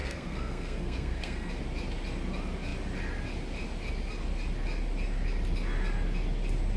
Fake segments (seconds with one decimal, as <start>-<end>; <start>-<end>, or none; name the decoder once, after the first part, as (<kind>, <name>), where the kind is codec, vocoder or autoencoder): 0.0-1.5 (codec, SNAC)